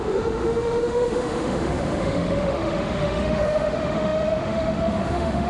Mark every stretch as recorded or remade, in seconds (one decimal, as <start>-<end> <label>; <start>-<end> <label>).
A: 0.0-5.5 remade